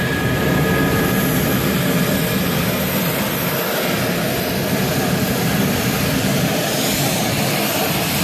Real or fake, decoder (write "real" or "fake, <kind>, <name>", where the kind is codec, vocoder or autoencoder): real